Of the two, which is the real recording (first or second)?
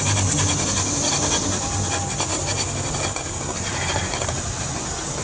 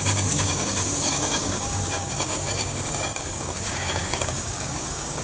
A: first